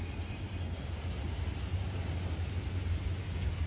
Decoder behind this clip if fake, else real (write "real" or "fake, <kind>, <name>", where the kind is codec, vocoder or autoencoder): fake, vocoder, BigVGAN v2